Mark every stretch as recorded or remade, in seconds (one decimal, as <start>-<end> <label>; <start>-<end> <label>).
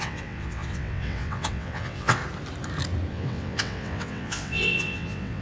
0.0-2.2 remade; 2.2-3.1 recorded; 3.1-5.4 remade